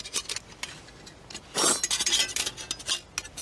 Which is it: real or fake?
real